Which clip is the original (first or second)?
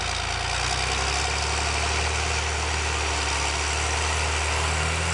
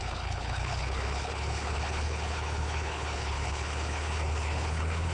first